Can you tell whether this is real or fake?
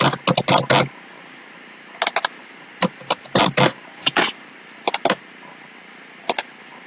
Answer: real